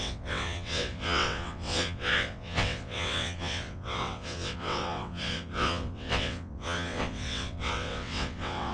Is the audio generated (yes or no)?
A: yes